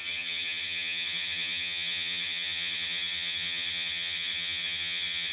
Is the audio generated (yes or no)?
yes